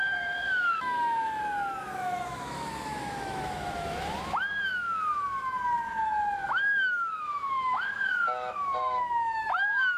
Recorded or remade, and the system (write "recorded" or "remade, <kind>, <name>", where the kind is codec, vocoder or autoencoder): remade, autoencoder, DAC-VAE